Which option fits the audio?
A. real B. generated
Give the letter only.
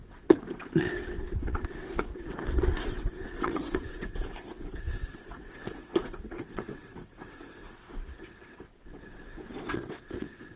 B